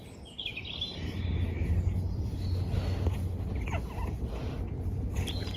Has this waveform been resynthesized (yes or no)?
no